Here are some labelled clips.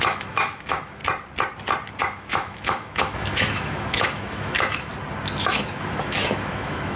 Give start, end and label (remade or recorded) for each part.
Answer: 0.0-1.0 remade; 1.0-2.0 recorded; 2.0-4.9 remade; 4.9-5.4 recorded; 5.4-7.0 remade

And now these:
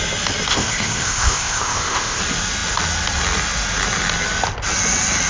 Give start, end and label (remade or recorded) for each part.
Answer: 0.0-0.5 recorded; 0.5-2.2 remade; 2.2-5.3 recorded

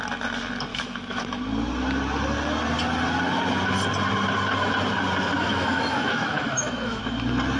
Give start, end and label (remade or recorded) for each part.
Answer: 0.0-0.7 recorded; 0.7-1.4 remade; 1.4-5.5 recorded; 5.5-7.0 remade; 7.0-7.6 recorded

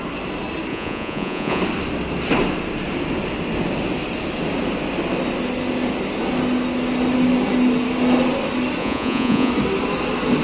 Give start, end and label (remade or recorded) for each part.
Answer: 0.0-0.7 recorded; 0.7-1.6 remade; 1.6-8.8 recorded; 8.8-9.5 remade; 9.5-10.4 recorded

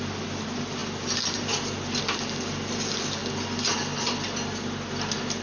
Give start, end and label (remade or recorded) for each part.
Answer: 0.0-5.4 recorded